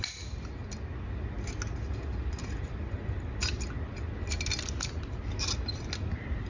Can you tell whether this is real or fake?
real